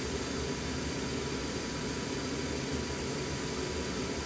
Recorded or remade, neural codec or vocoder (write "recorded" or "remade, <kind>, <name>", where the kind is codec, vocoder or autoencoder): recorded